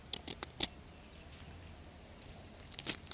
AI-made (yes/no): no